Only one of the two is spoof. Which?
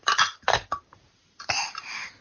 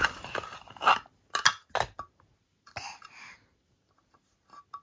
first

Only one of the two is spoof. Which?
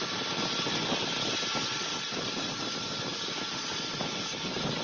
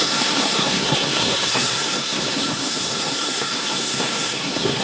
second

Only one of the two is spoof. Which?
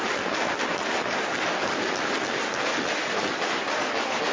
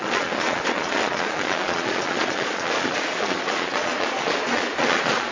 second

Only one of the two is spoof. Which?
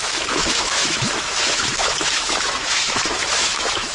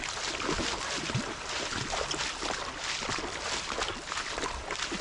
first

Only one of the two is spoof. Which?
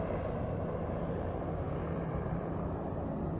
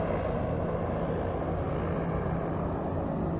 first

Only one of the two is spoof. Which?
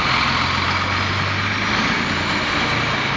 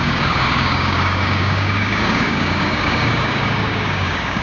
second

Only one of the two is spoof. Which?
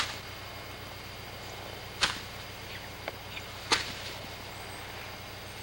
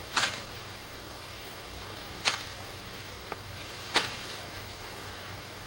second